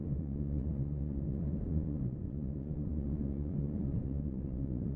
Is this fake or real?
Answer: fake